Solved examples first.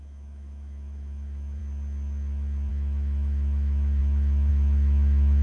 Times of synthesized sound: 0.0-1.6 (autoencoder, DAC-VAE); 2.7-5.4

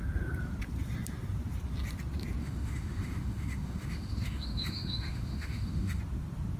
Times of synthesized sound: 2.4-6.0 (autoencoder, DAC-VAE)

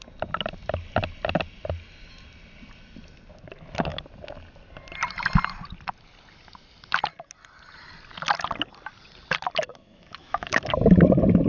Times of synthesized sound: 9.7-10.6 (autoencoder, DAC-VAE)

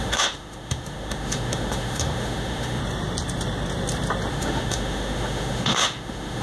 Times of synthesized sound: 0.0-2.8 (autoencoder, DAC-VAE); 4.3-6.4

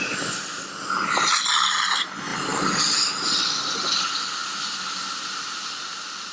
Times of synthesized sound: none